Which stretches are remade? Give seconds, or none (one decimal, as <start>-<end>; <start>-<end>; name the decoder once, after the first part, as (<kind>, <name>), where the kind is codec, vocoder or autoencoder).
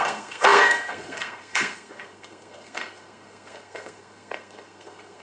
0.0-5.2 (codec, SNAC)